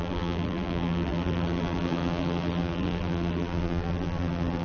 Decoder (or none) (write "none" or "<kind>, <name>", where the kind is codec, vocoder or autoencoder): vocoder, BigVGAN v2